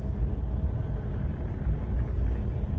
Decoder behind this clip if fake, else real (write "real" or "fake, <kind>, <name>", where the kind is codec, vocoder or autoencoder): real